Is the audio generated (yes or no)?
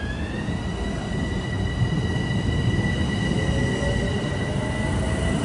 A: no